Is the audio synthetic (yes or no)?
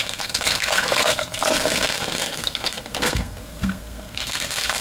yes